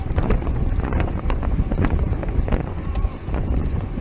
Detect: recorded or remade remade